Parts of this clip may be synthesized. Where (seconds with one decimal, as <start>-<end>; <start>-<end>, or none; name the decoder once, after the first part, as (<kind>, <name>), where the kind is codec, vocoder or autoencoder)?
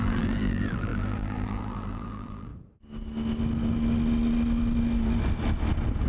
0.0-2.5 (vocoder, BigVGAN v2)